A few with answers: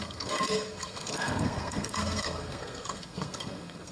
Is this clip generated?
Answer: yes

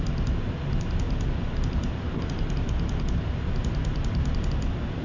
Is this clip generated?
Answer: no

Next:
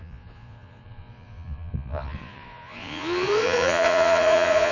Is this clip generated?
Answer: yes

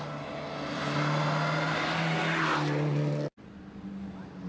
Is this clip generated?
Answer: no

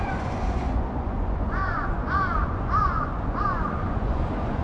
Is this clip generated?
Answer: yes